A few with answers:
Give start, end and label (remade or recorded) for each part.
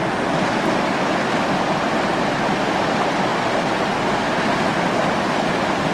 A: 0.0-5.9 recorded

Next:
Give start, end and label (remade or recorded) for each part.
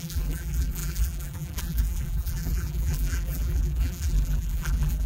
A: 0.0-5.1 remade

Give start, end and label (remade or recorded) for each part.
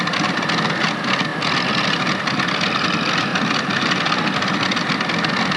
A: 0.0-3.3 recorded; 3.3-5.0 remade; 5.0-5.6 recorded